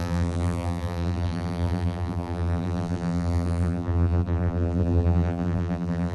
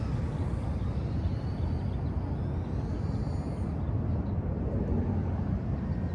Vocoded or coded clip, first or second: first